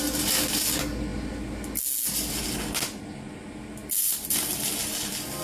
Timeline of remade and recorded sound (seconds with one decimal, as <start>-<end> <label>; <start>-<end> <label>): 0.0-3.8 recorded; 3.8-4.6 remade; 4.6-5.4 recorded